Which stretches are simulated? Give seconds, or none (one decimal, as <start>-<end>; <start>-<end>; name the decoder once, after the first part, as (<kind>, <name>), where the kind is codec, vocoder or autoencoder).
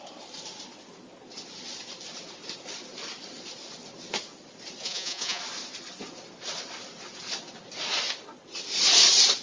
4.8-5.4 (vocoder, Vocos)